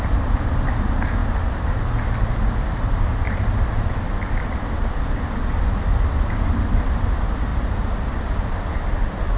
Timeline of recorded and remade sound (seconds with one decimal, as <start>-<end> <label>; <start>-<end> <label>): 0.0-1.2 remade; 1.2-2.3 recorded; 2.3-3.1 remade; 3.1-4.5 recorded; 4.5-9.4 remade